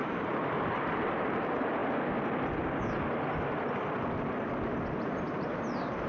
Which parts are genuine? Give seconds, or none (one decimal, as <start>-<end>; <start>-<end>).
1.8-5.5